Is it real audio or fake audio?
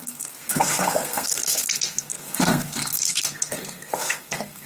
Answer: fake